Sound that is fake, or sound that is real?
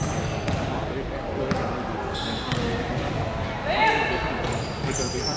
real